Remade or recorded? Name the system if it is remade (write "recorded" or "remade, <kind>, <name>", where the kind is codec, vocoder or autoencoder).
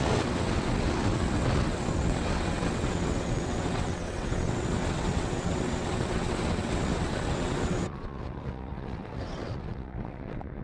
remade, vocoder, WaveNeXt